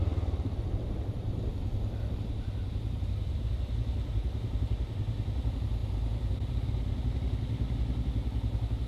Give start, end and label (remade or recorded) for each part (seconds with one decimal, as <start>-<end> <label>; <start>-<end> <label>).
0.0-8.9 recorded